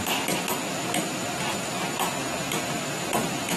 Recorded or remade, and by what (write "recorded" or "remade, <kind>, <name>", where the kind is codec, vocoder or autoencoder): recorded